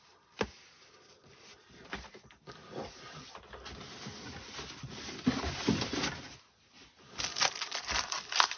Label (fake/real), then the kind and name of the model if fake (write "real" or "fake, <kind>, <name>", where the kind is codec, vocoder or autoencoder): real